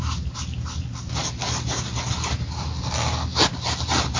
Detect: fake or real real